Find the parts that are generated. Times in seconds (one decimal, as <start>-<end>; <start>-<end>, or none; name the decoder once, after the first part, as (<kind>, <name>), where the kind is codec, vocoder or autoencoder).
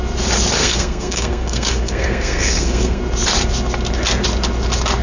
0.6-3.0 (codec, SNAC)